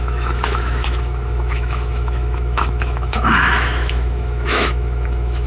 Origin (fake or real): fake